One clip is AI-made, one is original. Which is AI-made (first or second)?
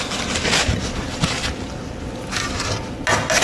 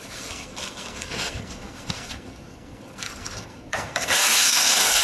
second